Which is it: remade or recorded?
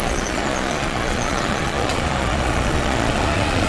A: remade